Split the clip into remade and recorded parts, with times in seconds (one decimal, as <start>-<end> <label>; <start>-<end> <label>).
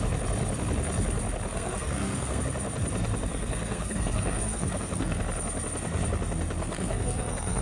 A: 0.0-1.5 recorded; 1.5-2.4 remade; 2.4-3.3 recorded; 3.3-5.2 remade; 5.2-6.6 recorded; 6.6-7.6 remade